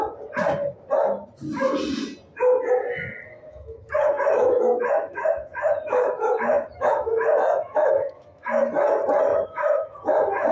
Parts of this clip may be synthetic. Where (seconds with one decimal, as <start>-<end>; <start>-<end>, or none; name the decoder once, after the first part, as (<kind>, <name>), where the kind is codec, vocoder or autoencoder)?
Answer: 3.5-8.6 (autoencoder, DAC-VAE); 9.3-10.5